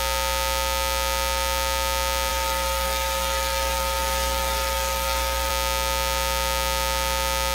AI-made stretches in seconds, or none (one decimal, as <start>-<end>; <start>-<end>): 2.3-5.5